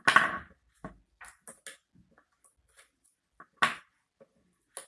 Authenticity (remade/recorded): recorded